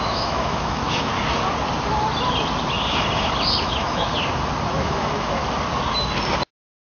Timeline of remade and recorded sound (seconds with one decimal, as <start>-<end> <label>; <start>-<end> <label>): 0.0-1.1 remade; 1.1-3.6 recorded; 3.6-4.1 remade; 4.1-4.7 recorded; 4.7-5.4 remade; 5.4-6.9 recorded